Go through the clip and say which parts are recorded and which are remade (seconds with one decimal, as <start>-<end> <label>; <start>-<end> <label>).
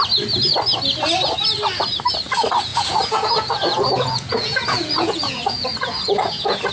0.0-2.7 recorded; 2.7-6.7 remade